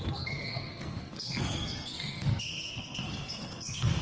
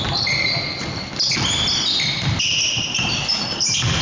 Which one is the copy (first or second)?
first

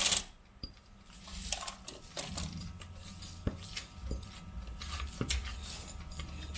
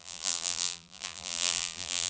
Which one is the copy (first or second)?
second